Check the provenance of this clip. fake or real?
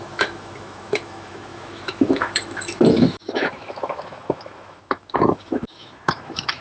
fake